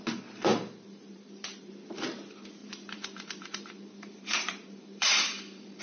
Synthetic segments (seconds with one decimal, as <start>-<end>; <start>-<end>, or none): 0.5-1.7; 2.6-5.8